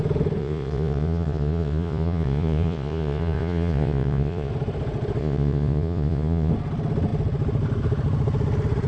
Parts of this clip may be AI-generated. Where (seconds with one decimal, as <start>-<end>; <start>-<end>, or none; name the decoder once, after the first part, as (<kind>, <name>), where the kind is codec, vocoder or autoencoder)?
0.4-4.5 (vocoder, Vocos); 5.2-6.5